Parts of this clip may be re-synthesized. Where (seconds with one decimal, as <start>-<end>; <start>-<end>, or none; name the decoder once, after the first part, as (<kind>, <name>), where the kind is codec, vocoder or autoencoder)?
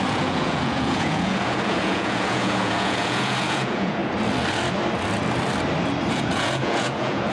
0.0-4.0 (vocoder, Vocos); 6.1-7.3